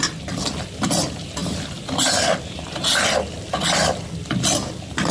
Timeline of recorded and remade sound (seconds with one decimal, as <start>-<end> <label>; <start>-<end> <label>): 0.0-5.1 recorded